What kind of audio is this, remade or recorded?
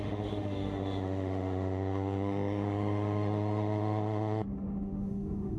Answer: remade